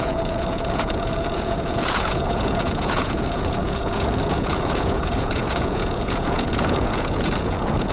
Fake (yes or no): yes